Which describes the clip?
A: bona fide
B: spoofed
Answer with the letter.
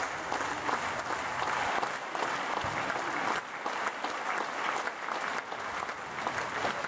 A